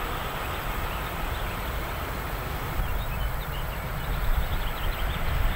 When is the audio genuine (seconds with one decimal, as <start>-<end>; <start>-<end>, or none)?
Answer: 4.2-4.9